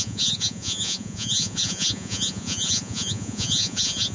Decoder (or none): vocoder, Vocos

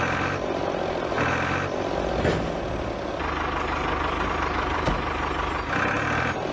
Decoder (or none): none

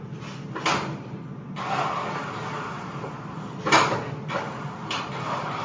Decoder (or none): none